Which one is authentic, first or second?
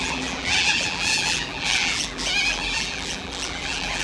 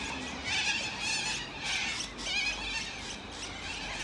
second